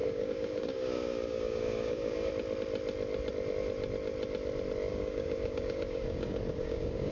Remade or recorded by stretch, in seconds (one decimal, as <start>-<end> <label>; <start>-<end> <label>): 0.0-2.3 remade; 2.3-4.9 recorded; 4.9-7.1 remade